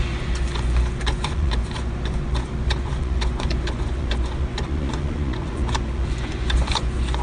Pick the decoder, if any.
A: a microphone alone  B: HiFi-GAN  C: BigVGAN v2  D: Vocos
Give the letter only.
D